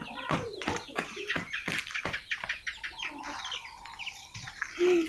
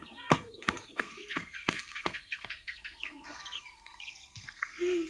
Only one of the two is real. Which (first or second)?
first